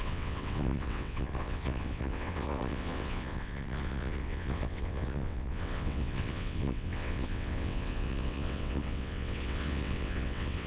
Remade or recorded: remade